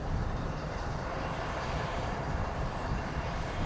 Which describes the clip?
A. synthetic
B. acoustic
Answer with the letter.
A